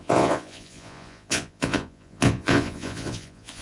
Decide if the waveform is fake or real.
fake